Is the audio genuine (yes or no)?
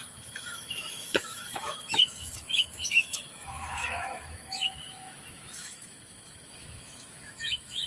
no